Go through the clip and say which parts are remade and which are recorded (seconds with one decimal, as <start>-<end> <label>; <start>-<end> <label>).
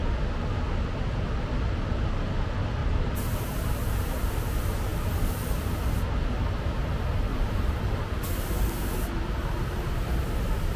0.0-2.8 recorded; 2.8-4.2 remade; 4.2-7.3 recorded; 7.3-8.0 remade; 8.0-10.8 recorded